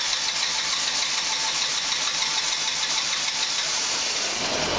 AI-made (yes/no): no